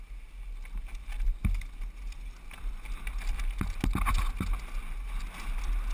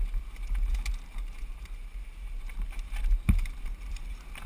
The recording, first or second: first